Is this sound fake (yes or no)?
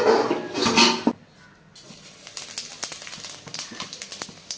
no